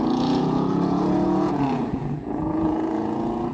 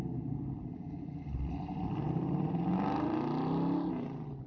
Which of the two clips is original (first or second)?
second